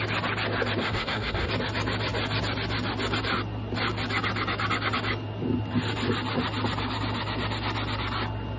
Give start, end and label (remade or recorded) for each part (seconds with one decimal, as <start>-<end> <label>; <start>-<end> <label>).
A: 0.0-0.8 recorded; 0.8-1.5 remade; 1.5-8.6 recorded